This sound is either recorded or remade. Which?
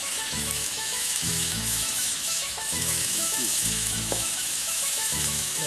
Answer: remade